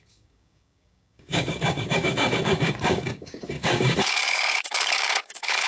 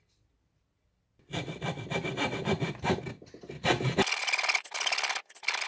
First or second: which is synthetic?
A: first